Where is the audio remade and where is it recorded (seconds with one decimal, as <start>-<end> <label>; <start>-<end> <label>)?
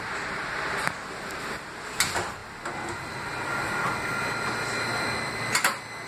0.0-6.1 recorded